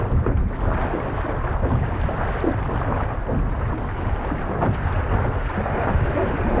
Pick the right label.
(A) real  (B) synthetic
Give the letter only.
A